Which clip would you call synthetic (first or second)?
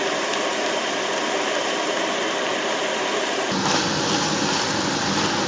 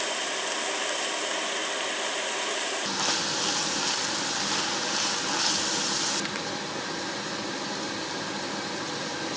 first